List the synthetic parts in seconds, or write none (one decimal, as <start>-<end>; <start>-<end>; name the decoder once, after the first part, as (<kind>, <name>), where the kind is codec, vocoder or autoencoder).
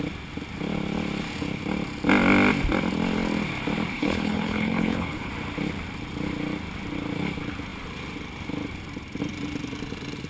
3.9-5.3 (codec, HILCodec)